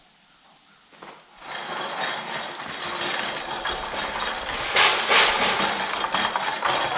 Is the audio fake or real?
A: real